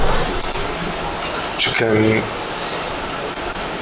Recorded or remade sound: recorded